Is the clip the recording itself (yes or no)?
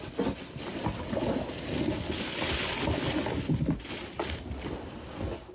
yes